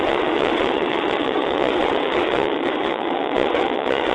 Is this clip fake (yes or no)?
yes